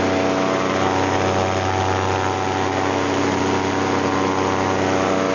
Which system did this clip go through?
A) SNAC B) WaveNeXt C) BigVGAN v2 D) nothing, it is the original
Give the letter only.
D